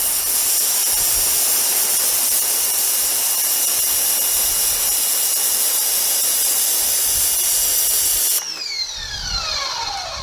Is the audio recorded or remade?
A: recorded